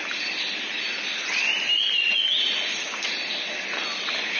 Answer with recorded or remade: recorded